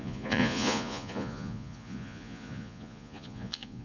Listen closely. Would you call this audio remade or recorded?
remade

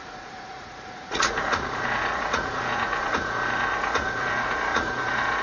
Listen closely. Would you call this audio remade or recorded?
remade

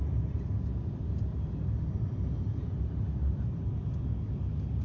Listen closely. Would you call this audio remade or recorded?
recorded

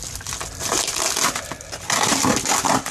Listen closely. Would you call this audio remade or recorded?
recorded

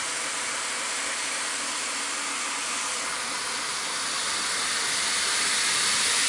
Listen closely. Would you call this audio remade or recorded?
recorded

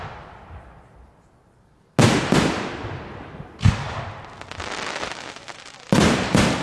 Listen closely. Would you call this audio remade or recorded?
recorded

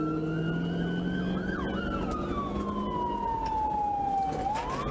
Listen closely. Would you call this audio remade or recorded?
recorded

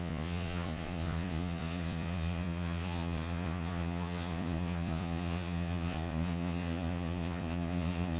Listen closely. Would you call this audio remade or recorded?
remade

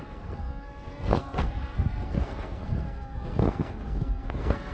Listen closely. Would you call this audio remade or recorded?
remade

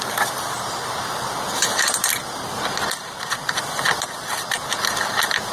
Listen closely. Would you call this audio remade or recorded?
recorded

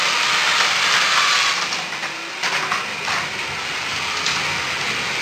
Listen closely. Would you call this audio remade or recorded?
recorded